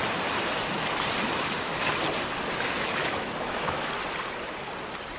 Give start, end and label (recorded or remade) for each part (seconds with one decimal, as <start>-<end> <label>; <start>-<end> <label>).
0.0-3.0 recorded; 3.0-3.9 remade; 3.9-5.2 recorded